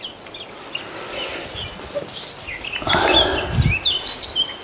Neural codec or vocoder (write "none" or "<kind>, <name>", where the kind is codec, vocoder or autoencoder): none